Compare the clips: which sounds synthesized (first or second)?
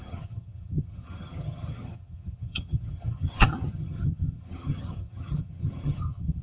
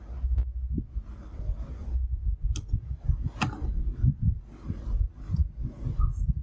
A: first